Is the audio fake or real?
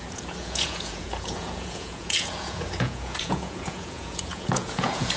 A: fake